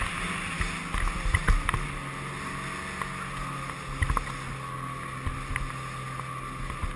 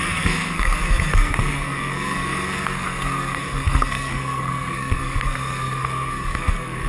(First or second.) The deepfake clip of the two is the second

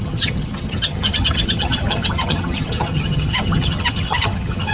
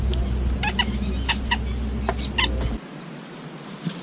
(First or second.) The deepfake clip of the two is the first